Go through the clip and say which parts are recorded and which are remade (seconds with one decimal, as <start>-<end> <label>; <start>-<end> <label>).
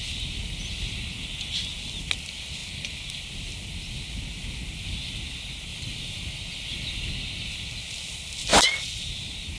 0.0-5.7 recorded; 5.7-7.1 remade; 7.1-8.5 recorded; 8.5-9.1 remade; 9.1-9.6 recorded